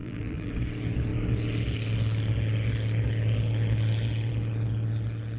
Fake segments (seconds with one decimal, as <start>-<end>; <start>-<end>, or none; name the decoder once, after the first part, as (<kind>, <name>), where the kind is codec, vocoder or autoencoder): 0.0-0.5 (vocoder, BigVGAN v2)